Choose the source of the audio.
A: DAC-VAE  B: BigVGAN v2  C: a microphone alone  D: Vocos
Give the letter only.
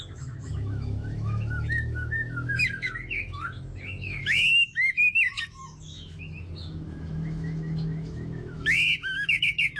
A